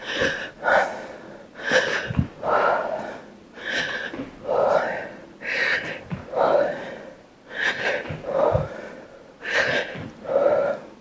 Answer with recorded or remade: remade